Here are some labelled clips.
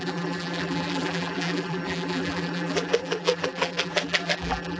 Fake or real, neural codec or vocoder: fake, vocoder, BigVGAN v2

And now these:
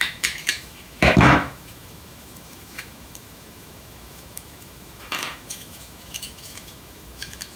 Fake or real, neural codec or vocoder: fake, autoencoder, DAC-VAE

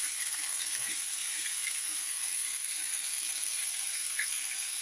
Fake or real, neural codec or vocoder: fake, codec, SNAC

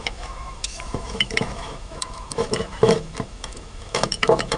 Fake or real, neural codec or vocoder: fake, autoencoder, DAC-VAE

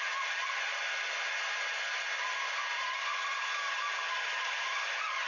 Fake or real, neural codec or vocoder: real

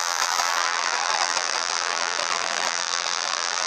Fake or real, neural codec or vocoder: fake, vocoder, BigVGAN v2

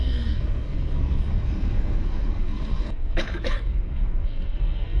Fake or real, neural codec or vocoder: fake, codec, SNAC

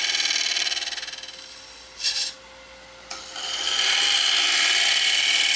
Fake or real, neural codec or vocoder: real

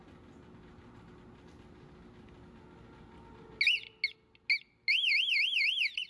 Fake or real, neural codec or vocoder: real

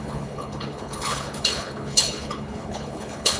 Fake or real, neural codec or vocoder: fake, codec, HILCodec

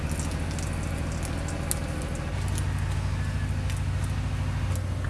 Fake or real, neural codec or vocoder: real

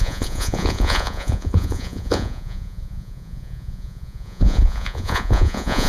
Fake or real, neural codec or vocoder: fake, vocoder, Vocos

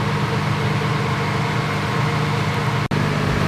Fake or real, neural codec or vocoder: real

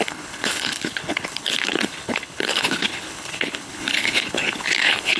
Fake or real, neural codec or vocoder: fake, codec, HILCodec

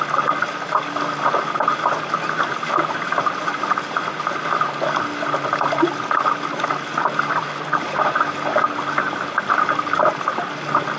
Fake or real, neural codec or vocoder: real